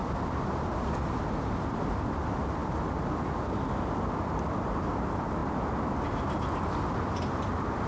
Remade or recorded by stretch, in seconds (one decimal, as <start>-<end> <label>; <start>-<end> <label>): 0.0-7.9 recorded